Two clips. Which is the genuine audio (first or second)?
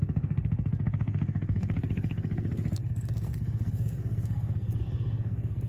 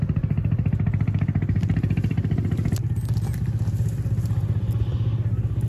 second